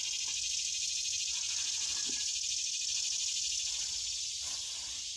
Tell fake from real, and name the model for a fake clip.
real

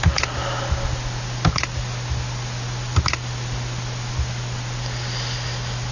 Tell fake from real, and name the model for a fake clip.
real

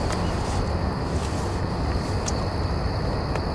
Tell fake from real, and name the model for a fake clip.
real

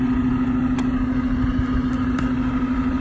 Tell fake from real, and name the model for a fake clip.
real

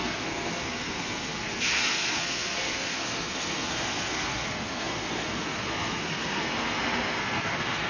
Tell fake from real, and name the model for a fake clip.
fake, codec, SNAC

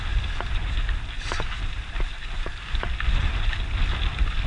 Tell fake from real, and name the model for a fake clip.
real